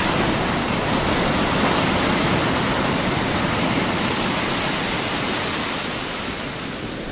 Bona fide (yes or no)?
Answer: yes